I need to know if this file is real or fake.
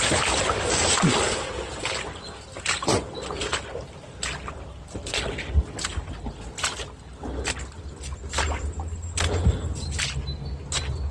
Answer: real